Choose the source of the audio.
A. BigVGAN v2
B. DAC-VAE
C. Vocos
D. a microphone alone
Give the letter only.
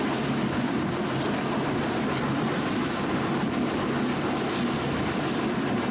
D